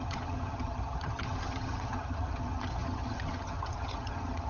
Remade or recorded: remade